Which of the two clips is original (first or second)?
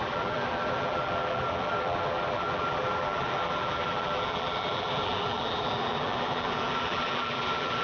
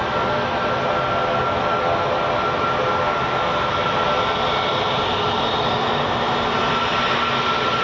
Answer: second